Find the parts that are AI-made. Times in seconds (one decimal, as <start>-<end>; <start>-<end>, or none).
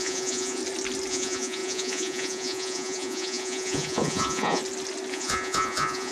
0.0-0.6; 1.1-4.6; 5.1-6.1